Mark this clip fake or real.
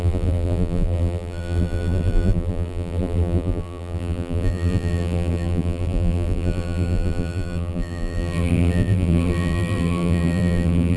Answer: fake